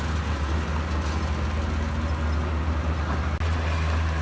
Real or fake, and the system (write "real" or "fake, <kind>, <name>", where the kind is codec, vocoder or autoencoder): real